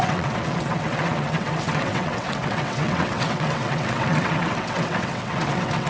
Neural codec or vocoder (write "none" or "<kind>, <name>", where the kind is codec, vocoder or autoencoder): vocoder, WaveNeXt